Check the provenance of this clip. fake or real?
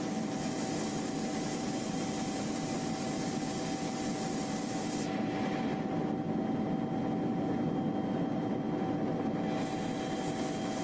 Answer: real